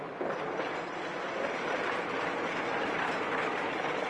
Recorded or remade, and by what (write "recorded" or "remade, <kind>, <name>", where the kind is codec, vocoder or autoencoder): recorded